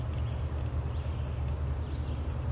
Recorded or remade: recorded